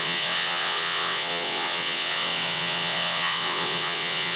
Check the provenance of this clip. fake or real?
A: fake